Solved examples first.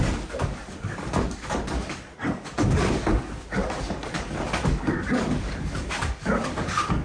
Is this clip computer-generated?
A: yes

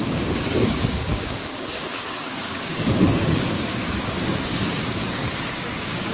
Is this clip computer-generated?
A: yes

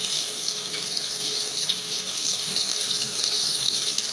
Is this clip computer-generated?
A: yes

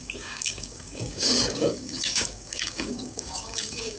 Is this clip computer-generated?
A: yes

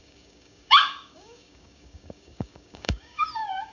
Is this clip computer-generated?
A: yes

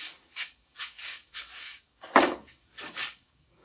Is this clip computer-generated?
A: yes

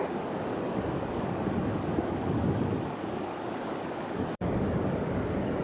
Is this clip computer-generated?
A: yes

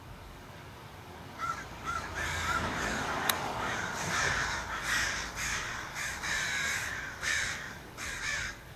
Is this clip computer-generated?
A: yes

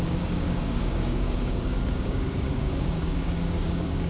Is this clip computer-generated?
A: yes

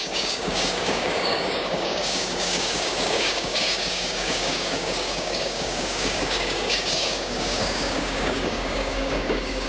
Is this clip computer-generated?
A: yes